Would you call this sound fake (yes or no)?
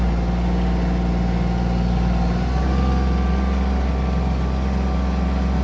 no